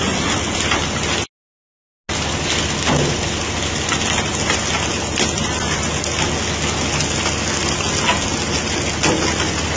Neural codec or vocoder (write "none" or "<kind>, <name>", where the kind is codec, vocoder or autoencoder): none